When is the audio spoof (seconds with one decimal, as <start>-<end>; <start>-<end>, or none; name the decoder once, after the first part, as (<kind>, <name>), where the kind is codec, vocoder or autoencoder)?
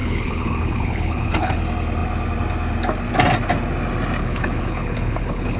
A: 0.0-1.6 (codec, HILCodec); 4.2-5.6